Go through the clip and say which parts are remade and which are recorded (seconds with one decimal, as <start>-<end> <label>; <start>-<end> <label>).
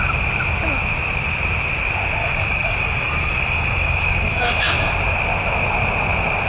0.0-2.2 recorded; 2.2-4.9 remade; 4.9-6.5 recorded